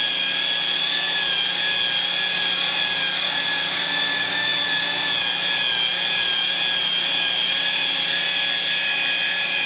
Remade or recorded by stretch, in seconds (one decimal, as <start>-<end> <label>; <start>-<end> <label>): 0.0-9.7 recorded